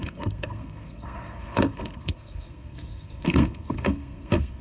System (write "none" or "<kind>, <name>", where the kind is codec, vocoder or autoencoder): codec, SNAC